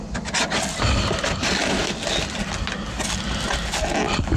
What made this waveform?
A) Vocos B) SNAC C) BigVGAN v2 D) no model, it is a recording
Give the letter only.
D